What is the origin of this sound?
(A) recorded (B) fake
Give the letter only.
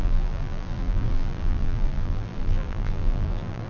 B